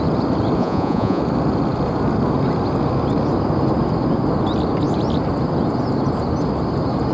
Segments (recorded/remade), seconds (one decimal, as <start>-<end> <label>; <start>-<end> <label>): 0.0-0.6 recorded; 0.6-1.2 remade; 1.2-7.1 recorded